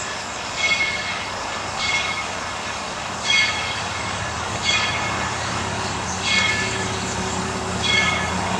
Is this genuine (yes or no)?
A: no